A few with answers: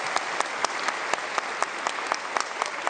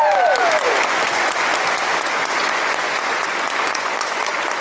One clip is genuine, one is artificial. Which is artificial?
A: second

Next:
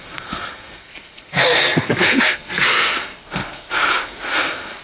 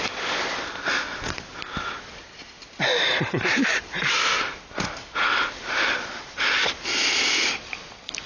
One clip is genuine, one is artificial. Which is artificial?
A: first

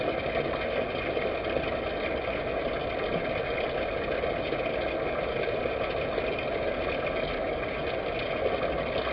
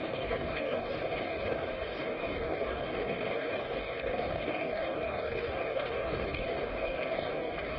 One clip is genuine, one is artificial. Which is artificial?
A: second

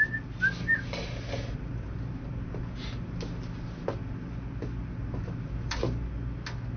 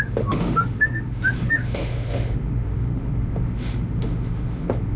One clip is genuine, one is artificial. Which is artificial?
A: second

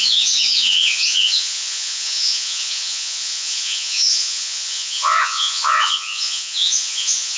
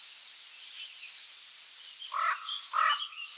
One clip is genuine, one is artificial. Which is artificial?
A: first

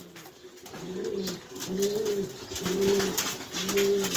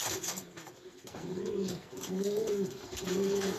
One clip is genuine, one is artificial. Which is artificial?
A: second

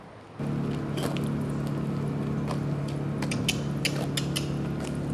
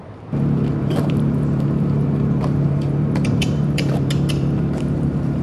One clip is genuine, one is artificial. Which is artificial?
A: second